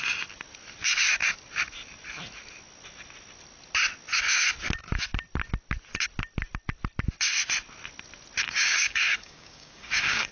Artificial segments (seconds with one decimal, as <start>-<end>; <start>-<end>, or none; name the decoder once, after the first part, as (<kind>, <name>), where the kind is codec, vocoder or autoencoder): 8.4-10.3 (codec, DAC)